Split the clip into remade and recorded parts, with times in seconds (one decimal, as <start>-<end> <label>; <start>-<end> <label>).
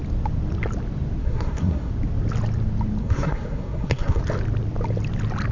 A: 0.0-1.2 recorded; 1.2-1.9 remade; 1.9-3.0 recorded; 3.0-4.2 remade; 4.2-5.5 recorded